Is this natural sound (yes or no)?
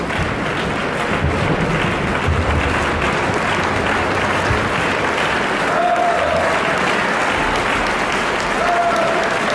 yes